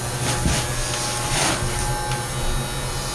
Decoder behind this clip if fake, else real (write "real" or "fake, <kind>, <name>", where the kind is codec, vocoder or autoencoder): real